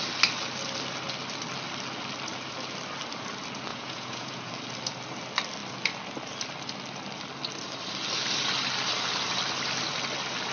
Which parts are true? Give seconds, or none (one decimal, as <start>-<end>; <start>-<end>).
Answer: 0.0-3.7; 4.5-10.5